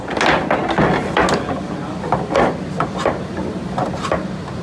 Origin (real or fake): real